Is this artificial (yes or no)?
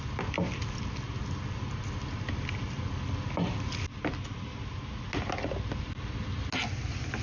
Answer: no